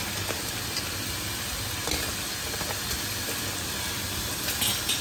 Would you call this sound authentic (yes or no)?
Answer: yes